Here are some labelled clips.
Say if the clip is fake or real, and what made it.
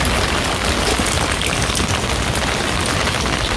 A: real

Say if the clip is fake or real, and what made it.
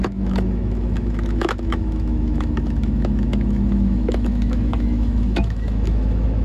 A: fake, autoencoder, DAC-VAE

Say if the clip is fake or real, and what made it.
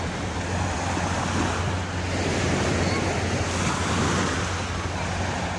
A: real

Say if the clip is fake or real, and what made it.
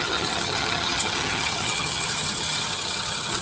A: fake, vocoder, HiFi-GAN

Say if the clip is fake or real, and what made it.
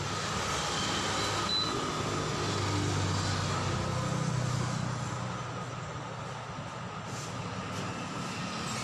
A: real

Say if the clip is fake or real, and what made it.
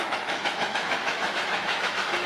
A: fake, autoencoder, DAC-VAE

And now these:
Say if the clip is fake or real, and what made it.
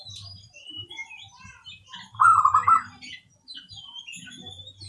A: fake, vocoder, BigVGAN v2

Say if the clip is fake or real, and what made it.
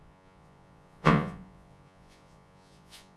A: fake, vocoder, Vocos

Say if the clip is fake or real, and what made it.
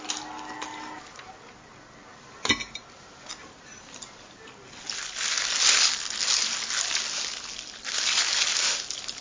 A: real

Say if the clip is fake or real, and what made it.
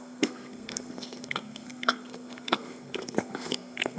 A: fake, codec, SNAC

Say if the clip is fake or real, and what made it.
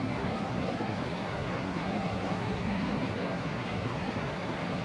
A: fake, codec, SNAC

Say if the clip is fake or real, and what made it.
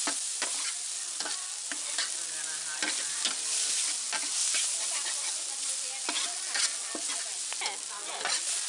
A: real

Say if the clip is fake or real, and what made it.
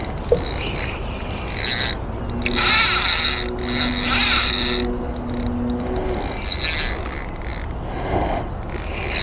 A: real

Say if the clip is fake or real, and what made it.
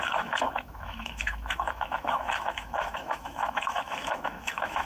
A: fake, autoencoder, DAC-VAE